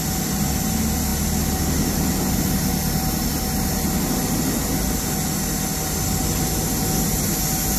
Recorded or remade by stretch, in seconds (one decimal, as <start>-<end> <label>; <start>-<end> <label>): 0.0-7.8 recorded